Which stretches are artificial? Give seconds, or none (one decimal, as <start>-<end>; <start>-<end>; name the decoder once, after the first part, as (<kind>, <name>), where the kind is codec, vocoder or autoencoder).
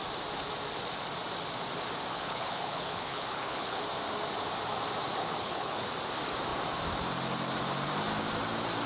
2.1-3.8 (codec, HILCodec); 5.2-5.9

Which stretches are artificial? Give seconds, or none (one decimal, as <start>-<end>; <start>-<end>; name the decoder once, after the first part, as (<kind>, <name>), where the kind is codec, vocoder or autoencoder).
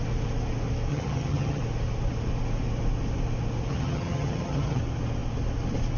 0.9-1.6 (vocoder, HiFi-GAN); 3.7-4.8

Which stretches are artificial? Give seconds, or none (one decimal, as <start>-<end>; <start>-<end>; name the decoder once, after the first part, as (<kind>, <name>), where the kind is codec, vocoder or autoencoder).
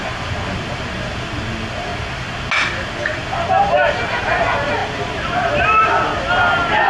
4.8-5.9 (vocoder, BigVGAN v2)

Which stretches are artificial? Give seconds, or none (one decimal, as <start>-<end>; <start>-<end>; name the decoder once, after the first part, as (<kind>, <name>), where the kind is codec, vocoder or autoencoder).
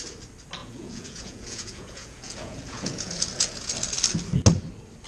0.6-3.7 (vocoder, Vocos)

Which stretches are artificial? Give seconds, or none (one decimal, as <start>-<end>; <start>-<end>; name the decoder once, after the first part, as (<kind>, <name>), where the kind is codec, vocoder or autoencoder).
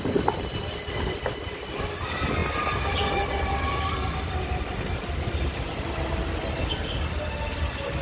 none